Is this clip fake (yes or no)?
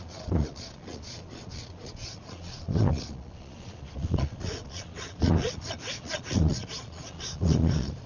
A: yes